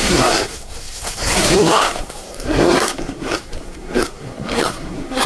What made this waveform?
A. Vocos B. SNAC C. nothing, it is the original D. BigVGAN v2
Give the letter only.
B